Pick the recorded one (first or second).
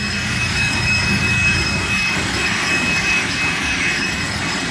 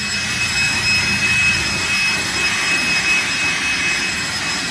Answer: second